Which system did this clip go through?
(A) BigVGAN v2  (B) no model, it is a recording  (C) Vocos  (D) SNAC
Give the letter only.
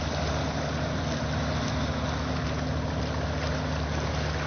B